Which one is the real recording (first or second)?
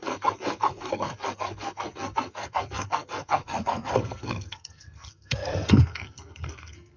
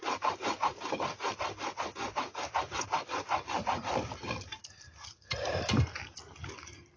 second